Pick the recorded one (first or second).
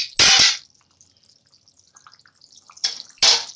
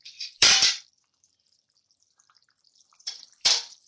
first